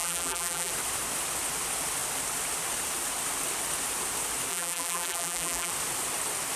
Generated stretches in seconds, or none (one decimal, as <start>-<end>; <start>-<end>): 0.0-0.7; 4.5-5.7